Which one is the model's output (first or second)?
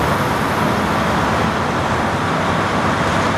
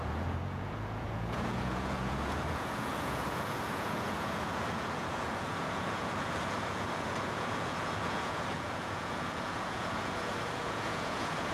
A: second